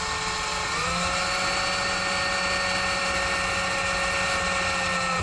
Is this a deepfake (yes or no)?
no